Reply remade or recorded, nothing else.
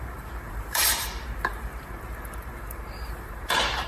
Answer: remade